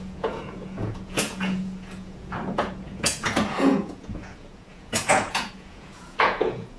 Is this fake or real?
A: fake